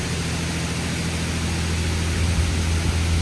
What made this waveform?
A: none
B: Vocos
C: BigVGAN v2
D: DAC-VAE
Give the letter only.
A